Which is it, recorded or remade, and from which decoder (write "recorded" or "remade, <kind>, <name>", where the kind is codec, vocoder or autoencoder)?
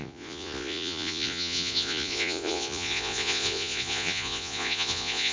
remade, vocoder, Vocos